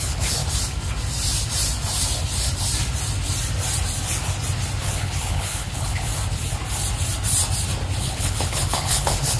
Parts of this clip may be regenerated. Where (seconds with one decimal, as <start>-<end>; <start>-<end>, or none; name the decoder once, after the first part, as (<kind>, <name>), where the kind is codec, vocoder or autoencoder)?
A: 0.0-0.4 (codec, HILCodec); 4.8-6.1; 8.0-9.4